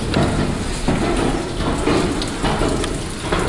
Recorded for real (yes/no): yes